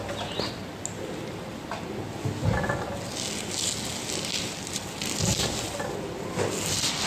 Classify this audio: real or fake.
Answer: real